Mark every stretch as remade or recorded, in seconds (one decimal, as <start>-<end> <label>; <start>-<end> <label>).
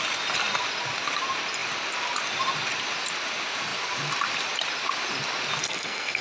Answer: 0.0-5.6 recorded; 5.6-6.2 remade